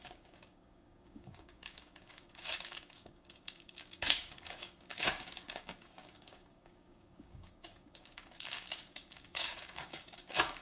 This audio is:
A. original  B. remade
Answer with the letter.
B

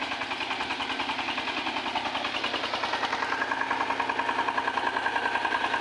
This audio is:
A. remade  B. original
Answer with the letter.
B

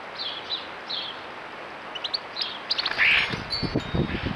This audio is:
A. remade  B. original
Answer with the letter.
B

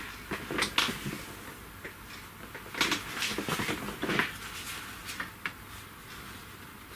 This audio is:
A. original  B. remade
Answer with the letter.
A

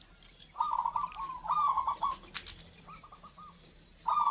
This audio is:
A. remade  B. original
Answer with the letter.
B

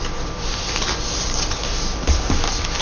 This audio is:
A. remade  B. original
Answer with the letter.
B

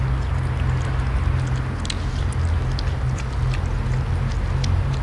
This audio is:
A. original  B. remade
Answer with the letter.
A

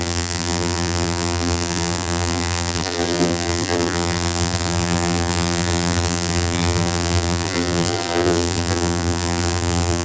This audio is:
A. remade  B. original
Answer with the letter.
A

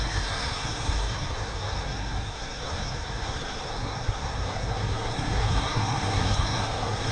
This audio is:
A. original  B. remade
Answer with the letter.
B